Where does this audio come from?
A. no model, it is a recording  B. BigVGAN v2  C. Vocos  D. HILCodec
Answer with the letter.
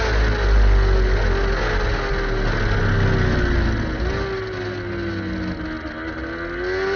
A